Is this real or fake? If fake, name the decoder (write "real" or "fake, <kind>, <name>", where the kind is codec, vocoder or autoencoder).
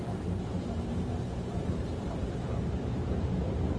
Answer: fake, vocoder, BigVGAN v2